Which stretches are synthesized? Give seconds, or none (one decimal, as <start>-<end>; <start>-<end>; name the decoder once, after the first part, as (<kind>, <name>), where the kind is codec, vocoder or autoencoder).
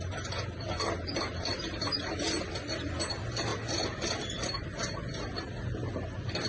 none